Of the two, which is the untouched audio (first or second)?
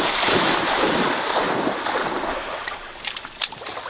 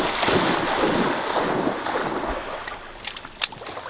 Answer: second